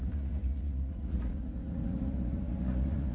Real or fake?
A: fake